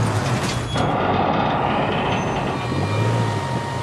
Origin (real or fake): real